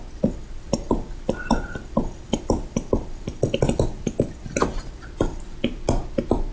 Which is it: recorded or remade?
recorded